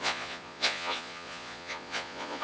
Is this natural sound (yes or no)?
no